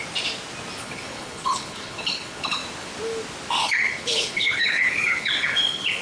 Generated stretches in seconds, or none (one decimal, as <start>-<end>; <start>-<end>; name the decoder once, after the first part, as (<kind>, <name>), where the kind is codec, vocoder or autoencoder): 0.8-2.6 (codec, HILCodec); 3.6-6.0